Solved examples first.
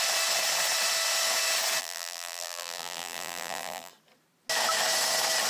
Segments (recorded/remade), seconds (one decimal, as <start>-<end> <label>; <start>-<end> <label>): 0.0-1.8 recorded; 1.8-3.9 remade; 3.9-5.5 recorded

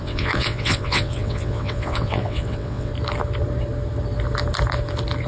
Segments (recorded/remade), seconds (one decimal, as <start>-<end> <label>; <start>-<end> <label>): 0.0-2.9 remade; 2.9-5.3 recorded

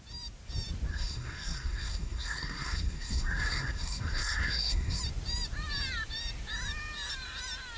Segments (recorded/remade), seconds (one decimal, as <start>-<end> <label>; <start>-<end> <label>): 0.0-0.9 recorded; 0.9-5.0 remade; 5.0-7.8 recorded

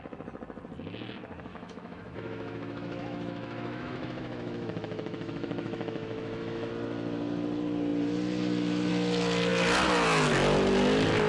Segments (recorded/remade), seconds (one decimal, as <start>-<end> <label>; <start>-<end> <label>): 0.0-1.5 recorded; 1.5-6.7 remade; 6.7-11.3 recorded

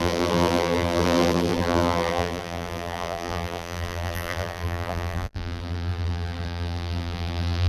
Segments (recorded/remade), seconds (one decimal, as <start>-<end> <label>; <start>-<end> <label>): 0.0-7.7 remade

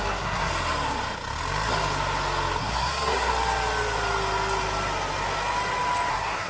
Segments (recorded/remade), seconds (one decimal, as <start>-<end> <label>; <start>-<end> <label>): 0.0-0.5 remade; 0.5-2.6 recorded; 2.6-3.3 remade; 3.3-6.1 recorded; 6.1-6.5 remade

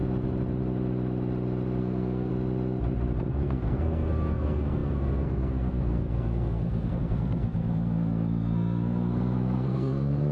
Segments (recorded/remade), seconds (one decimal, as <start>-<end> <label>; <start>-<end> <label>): 0.0-1.8 recorded; 1.8-2.3 remade; 2.3-3.3 recorded; 3.3-10.3 remade

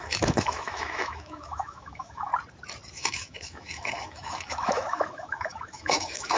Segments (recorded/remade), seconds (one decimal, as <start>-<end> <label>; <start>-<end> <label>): 0.0-2.3 remade; 2.3-2.9 recorded; 2.9-6.4 remade